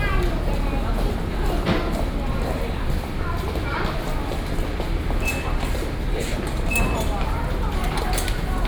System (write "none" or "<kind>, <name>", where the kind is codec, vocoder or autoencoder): none